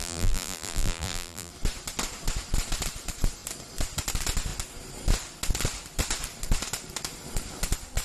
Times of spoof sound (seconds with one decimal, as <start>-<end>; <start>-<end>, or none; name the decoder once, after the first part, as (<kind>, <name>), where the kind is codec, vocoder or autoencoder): 0.0-1.5 (vocoder, BigVGAN v2)